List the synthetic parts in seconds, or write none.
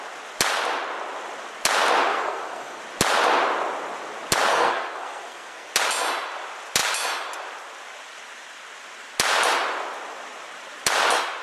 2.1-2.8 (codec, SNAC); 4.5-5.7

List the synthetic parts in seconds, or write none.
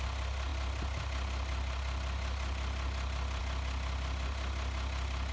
none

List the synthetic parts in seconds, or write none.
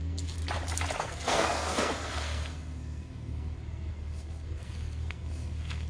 0.0-0.4 (codec, SNAC); 1.0-5.9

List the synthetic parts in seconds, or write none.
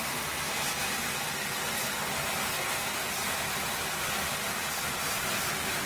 2.5-3.1 (codec, SNAC)